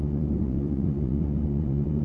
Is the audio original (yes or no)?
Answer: no